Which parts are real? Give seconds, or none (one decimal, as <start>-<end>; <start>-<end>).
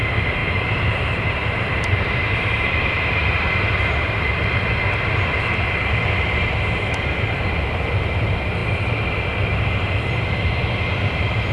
0.0-0.4; 4.3-11.5